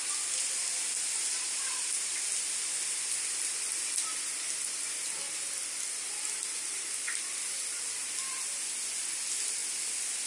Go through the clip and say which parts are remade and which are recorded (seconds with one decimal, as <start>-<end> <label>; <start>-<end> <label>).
0.0-10.3 recorded